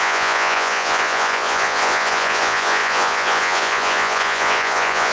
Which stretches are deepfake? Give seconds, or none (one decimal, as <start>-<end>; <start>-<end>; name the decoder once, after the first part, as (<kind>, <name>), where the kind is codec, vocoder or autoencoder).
0.0-5.1 (vocoder, Vocos)